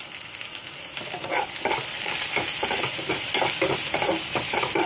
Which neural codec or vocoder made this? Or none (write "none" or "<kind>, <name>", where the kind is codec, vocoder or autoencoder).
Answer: none